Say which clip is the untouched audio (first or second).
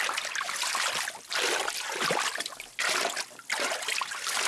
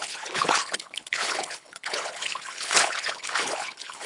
first